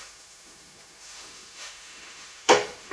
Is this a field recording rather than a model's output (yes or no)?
no